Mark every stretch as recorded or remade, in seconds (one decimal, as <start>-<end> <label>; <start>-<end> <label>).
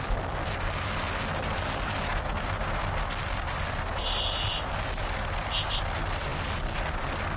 0.0-7.4 recorded